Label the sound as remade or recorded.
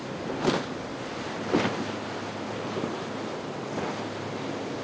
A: recorded